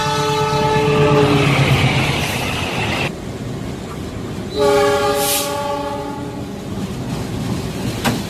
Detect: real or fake real